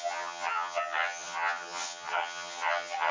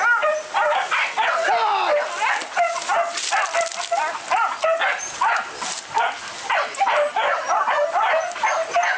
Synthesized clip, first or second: first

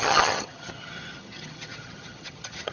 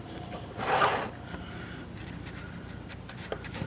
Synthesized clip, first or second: first